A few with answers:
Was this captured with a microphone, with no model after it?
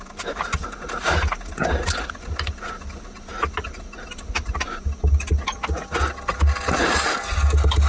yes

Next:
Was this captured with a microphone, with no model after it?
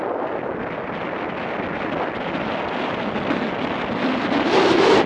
yes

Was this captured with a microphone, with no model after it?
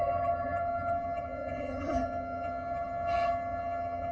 no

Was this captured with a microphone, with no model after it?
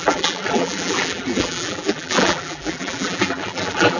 no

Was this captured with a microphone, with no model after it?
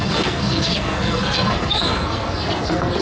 no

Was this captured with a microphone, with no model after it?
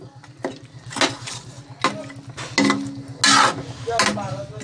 yes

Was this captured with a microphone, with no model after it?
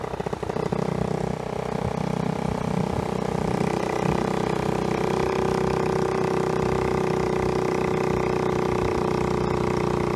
yes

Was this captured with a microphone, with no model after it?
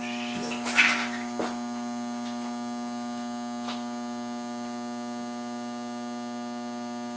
yes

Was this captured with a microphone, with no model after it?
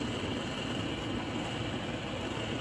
yes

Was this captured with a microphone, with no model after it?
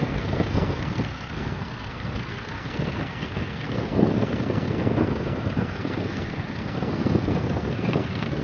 no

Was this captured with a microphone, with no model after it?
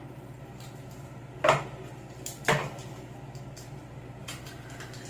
yes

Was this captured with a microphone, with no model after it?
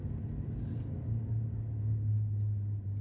yes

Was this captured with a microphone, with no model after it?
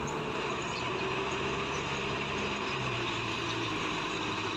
no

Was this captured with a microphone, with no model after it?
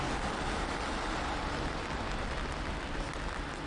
yes